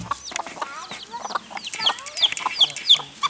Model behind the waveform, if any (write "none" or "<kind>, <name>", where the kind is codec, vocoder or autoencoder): none